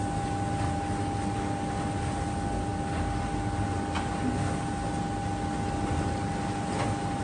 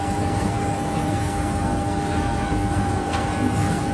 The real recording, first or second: first